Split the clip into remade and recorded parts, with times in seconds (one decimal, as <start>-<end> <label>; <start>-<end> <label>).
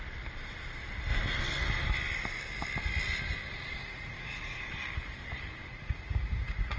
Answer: 0.0-3.8 recorded; 3.8-4.6 remade; 4.6-5.7 recorded; 5.7-6.8 remade